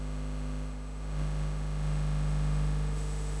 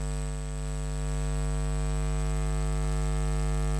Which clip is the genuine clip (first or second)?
second